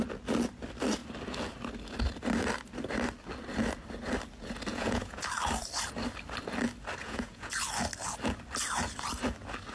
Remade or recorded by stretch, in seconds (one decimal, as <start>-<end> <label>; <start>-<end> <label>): 0.0-4.7 recorded; 4.7-5.2 remade; 5.2-7.0 recorded; 7.0-7.5 remade; 7.5-9.7 recorded